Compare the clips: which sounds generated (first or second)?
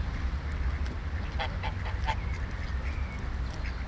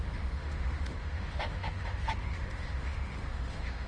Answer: second